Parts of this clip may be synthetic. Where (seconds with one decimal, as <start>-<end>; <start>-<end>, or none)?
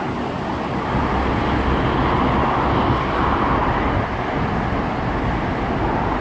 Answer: none